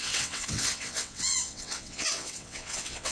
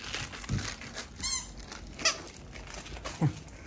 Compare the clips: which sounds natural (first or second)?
second